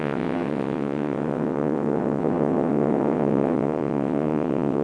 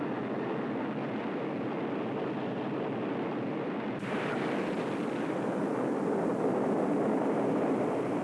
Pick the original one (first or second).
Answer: second